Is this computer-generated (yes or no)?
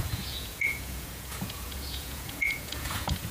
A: yes